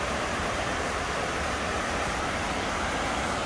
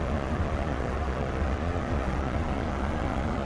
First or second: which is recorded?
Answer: first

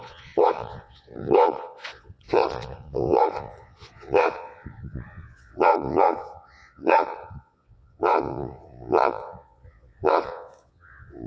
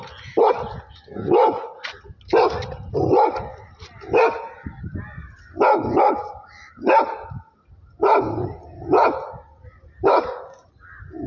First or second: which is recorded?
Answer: second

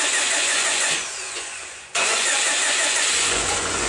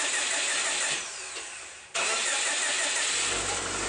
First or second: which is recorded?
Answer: second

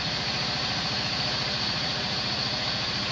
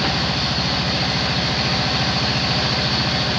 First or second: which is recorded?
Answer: second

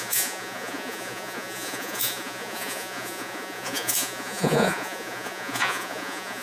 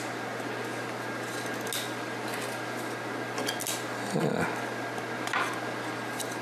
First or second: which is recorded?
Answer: second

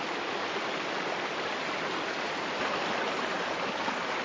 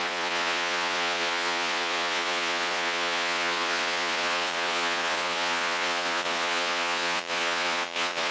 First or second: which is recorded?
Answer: first